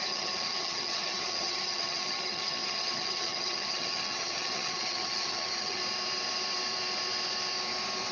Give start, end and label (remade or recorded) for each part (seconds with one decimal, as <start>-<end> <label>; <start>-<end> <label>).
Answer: 0.0-5.8 remade; 5.8-8.1 recorded